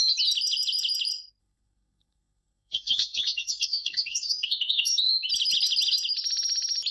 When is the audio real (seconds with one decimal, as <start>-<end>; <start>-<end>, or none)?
0.0-1.4; 5.1-6.9